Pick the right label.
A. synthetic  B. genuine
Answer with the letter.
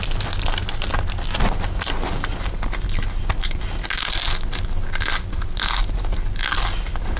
B